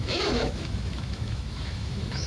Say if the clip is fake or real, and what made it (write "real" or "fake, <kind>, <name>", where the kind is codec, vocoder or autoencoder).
fake, autoencoder, DAC-VAE